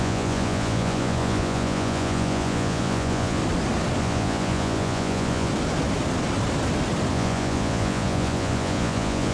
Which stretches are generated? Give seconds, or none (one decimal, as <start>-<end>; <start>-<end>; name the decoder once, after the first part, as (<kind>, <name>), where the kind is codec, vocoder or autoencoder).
0.0-3.4 (vocoder, Vocos); 4.0-5.5; 7.1-9.3